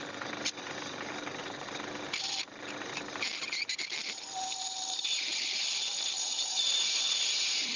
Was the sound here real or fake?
real